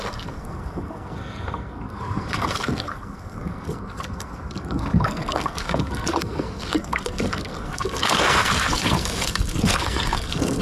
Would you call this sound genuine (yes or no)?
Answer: no